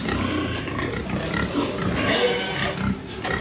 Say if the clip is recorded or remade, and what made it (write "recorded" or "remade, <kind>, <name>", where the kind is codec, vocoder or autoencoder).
recorded